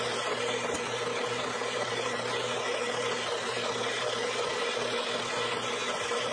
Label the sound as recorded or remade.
recorded